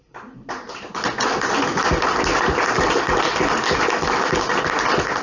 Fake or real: real